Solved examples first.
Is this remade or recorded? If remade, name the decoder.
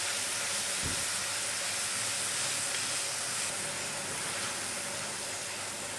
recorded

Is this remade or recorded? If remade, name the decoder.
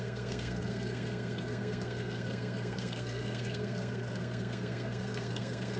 remade, codec, SNAC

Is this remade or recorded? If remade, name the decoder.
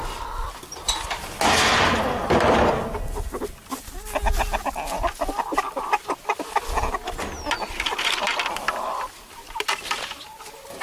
recorded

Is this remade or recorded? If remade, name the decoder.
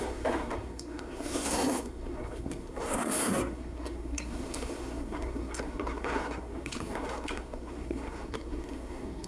remade, codec, SNAC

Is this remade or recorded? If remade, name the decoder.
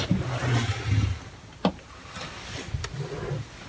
recorded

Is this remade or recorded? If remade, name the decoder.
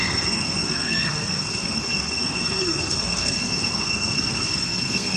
remade, codec, SNAC